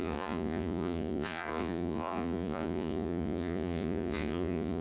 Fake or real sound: fake